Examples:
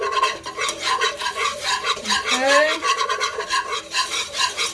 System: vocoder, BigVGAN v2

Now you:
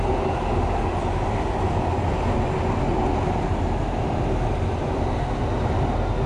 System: none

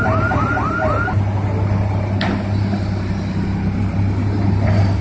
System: none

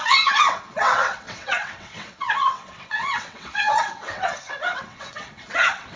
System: vocoder, WaveNeXt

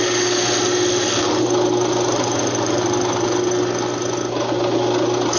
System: none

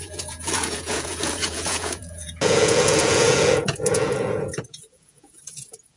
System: vocoder, Vocos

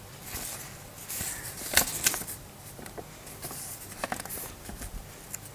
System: none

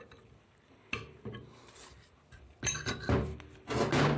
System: none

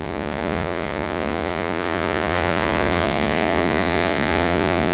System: vocoder, Vocos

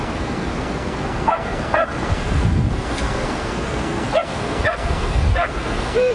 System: codec, SNAC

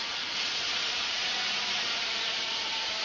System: vocoder, Vocos